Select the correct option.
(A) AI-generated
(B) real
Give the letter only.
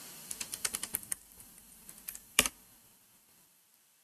A